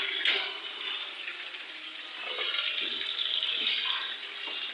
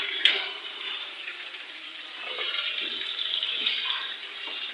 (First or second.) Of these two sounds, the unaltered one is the first